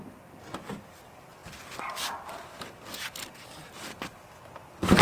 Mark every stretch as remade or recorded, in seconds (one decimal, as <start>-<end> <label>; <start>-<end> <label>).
0.0-5.0 recorded